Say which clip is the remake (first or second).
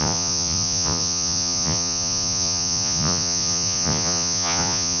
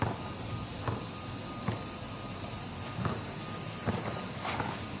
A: first